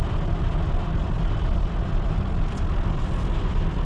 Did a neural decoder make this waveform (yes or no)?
no